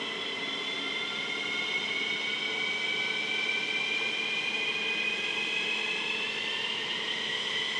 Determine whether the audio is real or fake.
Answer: real